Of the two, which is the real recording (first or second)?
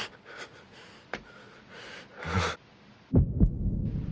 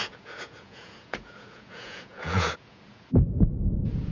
first